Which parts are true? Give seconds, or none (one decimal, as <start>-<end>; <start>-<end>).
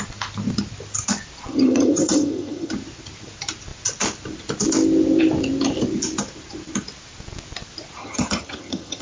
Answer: 0.0-1.5; 2.7-8.0